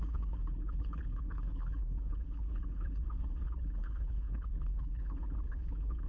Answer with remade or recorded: remade